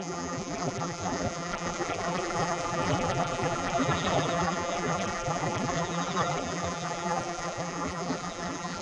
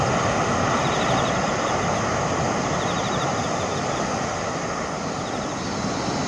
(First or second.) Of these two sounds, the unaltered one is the second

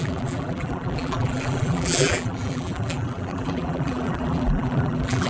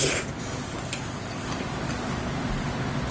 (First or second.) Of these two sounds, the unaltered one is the second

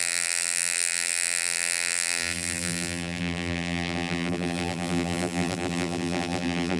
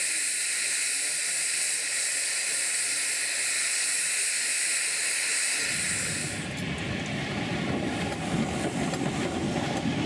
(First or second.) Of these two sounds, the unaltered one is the second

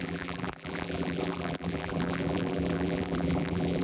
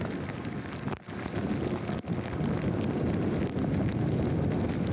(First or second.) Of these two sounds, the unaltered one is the second